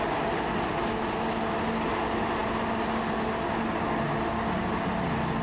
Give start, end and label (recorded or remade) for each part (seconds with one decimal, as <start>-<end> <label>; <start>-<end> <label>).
0.0-5.4 recorded